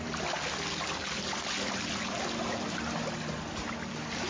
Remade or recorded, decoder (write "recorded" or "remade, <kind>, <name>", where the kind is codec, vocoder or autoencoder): recorded